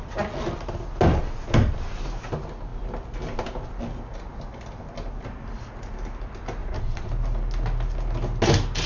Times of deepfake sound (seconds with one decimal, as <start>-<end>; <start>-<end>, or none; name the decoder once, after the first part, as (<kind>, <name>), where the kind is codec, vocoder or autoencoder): 6.6-7.1 (vocoder, Vocos)